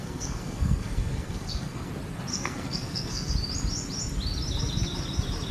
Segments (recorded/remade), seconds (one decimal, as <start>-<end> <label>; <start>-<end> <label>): 0.0-1.9 remade; 1.9-2.3 recorded; 2.3-3.3 remade; 3.3-5.5 recorded